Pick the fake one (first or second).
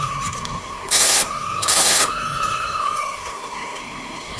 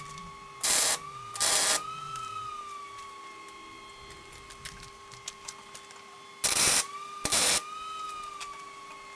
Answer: first